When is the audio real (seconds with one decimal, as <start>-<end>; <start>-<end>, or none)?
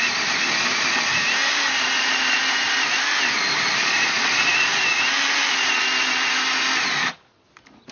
0.0-7.9